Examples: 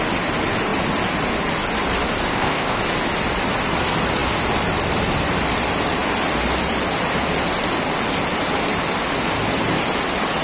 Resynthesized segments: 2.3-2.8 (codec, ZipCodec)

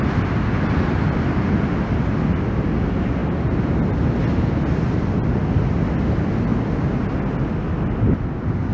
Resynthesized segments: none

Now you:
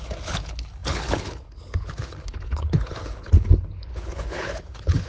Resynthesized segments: 0.0-5.1 (codec, HILCodec)

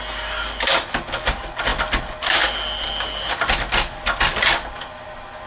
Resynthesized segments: none

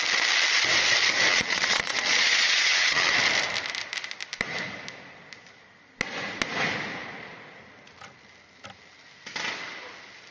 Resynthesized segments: 1.3-3.1 (vocoder, Vocos)

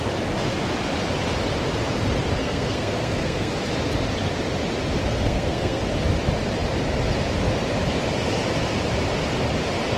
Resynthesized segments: 2.4-3.5 (codec, SNAC); 5.0-5.8

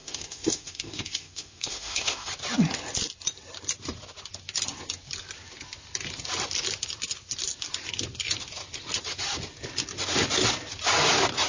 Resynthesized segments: 0.0-2.3 (autoencoder, DAC-VAE)